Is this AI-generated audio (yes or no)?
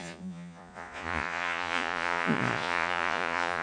yes